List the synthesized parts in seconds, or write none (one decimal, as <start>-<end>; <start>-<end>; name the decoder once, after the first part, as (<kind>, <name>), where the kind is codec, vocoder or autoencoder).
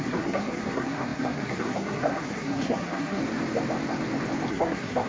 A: 0.0-3.2 (codec, SNAC); 4.5-5.1